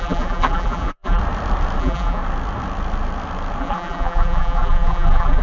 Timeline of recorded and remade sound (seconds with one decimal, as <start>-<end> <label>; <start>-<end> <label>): 0.0-1.2 remade; 1.2-1.8 recorded; 1.8-2.2 remade; 2.2-3.6 recorded; 3.6-5.4 remade